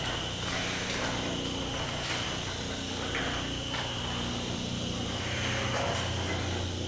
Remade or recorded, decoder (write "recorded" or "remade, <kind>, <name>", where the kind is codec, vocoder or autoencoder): recorded